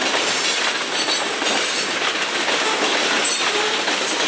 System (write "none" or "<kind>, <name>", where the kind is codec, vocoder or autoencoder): none